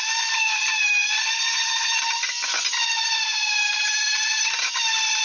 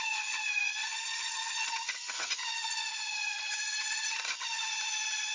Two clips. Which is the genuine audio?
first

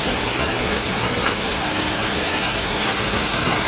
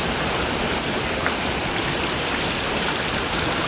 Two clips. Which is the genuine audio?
second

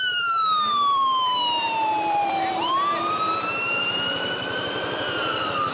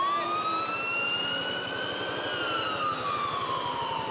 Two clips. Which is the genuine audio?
second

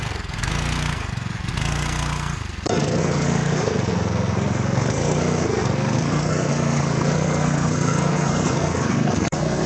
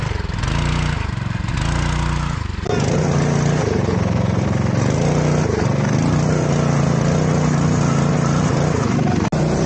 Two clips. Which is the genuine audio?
second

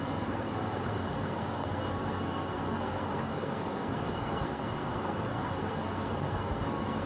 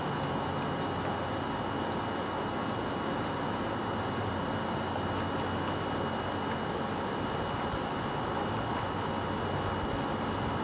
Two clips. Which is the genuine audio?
second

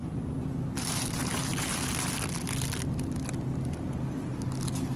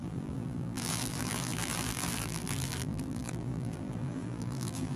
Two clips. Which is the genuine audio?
first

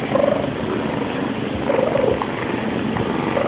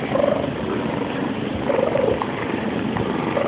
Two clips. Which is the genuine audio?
first